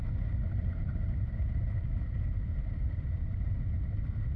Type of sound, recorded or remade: recorded